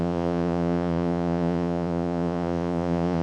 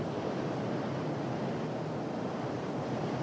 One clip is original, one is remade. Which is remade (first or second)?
first